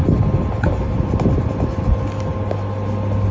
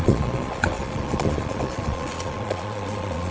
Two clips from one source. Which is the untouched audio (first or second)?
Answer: first